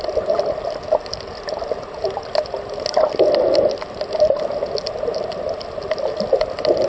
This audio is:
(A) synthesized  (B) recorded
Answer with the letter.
B